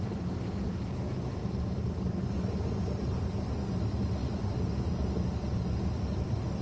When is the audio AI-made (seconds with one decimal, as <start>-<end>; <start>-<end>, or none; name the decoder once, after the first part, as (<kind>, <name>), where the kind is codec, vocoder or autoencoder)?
1.4-3.7 (vocoder, BigVGAN v2); 4.2-5.1